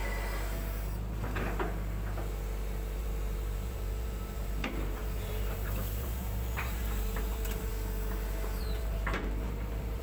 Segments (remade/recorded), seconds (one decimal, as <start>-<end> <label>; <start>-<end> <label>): 0.0-3.0 recorded; 3.0-7.7 remade; 7.7-8.6 recorded; 8.6-10.0 remade